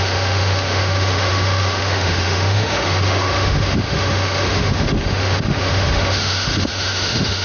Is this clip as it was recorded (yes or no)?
no